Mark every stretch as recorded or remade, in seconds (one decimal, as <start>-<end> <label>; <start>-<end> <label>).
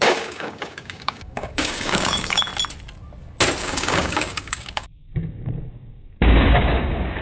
0.0-2.5 remade; 2.5-3.6 recorded; 3.6-7.2 remade